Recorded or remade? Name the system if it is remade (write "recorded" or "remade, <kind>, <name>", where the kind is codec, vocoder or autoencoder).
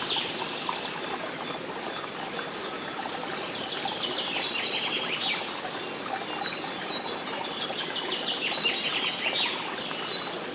recorded